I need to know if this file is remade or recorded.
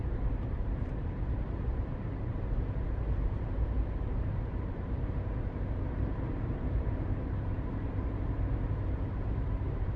remade